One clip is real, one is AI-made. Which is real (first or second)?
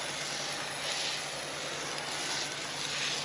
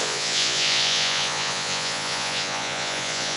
first